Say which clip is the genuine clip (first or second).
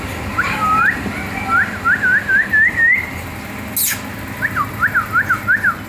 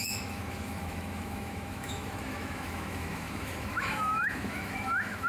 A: first